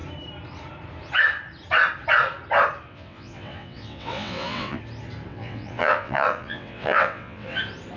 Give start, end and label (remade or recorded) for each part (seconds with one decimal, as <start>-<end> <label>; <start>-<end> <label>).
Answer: 0.0-2.9 recorded; 2.9-4.8 remade; 4.8-5.3 recorded; 5.3-7.6 remade; 7.6-8.0 recorded